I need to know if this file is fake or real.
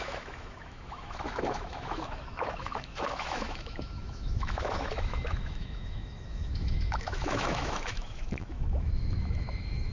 fake